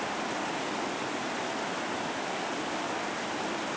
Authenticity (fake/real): real